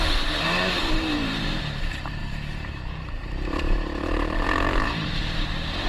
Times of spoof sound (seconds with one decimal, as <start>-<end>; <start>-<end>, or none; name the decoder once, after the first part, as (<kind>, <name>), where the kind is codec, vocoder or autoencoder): 0.0-5.9 (vocoder, BigVGAN v2)